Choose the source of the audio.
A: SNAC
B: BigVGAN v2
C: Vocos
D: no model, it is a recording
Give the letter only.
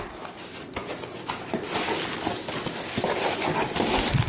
D